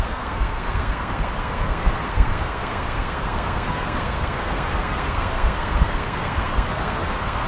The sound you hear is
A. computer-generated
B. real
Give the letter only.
A